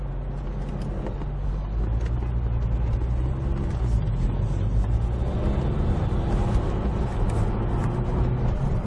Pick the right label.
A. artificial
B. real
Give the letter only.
B